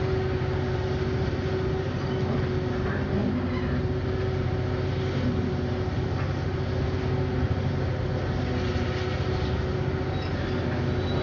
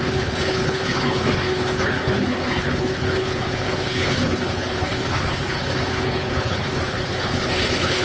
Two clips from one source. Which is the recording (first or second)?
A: first